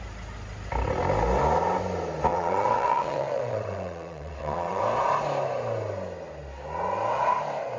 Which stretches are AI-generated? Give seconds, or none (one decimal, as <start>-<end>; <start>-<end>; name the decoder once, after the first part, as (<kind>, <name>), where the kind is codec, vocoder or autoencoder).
2.3-4.8 (vocoder, WaveNeXt)